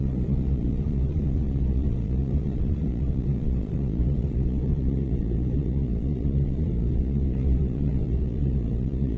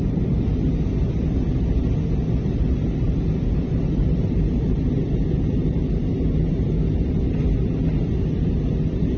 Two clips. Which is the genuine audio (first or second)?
second